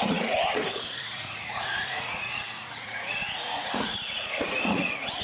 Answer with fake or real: fake